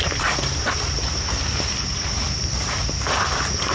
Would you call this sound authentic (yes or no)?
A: yes